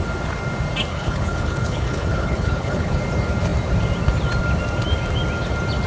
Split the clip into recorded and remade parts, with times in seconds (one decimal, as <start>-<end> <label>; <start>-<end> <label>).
0.0-0.9 recorded; 0.9-3.0 remade; 3.0-5.9 recorded